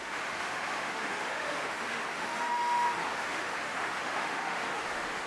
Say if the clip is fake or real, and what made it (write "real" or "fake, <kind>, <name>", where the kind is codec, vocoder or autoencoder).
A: fake, autoencoder, DAC-VAE